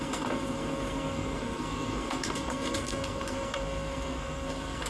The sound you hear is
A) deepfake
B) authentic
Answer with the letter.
A